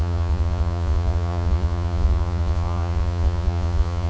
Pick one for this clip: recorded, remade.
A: remade